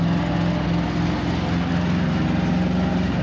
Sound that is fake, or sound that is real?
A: real